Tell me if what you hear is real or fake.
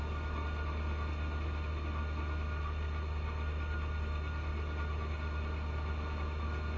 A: real